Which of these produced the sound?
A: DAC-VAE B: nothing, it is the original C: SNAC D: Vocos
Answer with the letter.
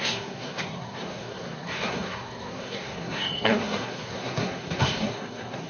C